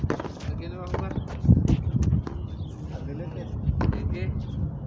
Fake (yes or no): no